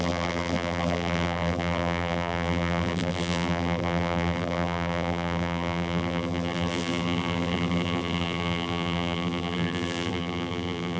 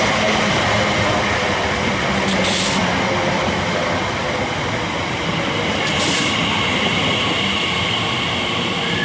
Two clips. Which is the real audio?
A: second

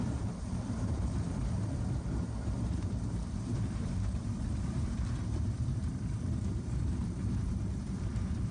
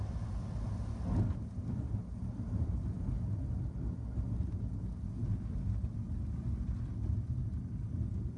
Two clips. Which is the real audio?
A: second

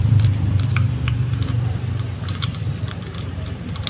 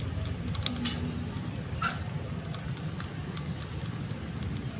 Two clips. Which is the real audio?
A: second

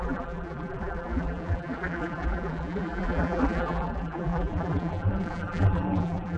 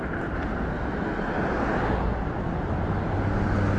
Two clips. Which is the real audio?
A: second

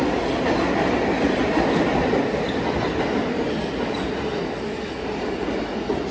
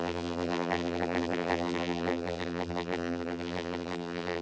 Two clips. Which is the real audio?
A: first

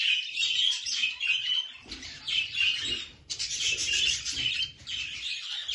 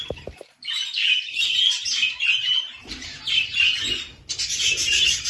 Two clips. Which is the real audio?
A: second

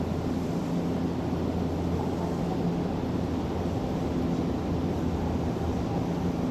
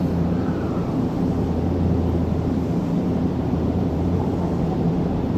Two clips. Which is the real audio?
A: first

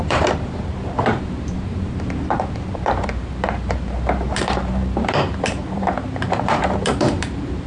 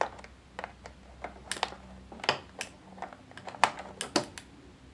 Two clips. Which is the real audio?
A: second